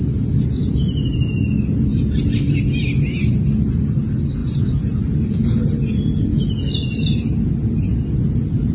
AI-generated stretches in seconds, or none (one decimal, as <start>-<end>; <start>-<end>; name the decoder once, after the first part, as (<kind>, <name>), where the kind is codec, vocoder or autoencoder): none